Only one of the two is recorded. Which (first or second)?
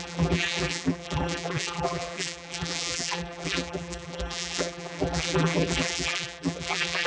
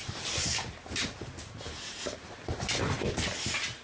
second